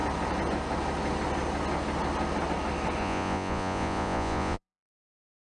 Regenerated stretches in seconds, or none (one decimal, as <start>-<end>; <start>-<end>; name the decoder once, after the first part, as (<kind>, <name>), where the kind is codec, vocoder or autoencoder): 3.0-4.9 (vocoder, Vocos)